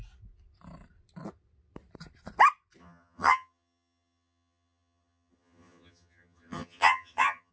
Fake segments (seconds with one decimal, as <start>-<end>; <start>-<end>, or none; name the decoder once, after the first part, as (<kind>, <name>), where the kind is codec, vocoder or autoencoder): 2.8-7.5 (vocoder, HiFi-GAN)